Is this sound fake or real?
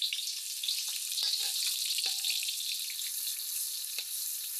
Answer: real